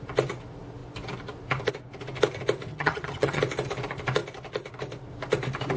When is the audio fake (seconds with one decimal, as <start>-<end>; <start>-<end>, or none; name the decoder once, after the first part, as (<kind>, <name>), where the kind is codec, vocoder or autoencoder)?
2.7-3.4 (vocoder, HiFi-GAN)